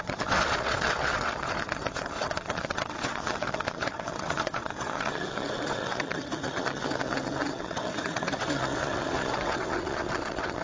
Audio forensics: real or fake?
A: fake